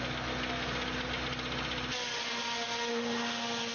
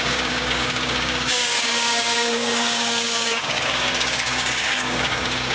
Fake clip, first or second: second